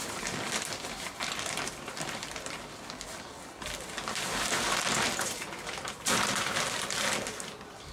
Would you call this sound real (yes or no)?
yes